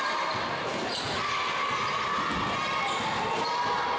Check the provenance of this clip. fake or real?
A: real